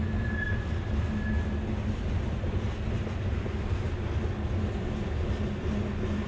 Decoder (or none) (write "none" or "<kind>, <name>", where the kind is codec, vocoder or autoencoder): none